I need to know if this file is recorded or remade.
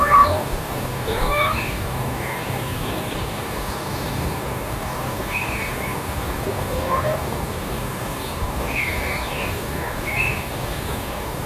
remade